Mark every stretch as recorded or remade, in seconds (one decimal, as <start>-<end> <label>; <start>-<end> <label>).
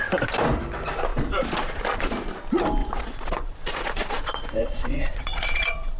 0.0-1.1 recorded; 1.1-1.8 remade; 1.8-2.8 recorded; 2.8-6.0 remade